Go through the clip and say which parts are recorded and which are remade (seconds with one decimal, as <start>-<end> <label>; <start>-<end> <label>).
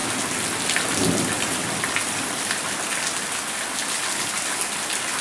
0.0-5.2 recorded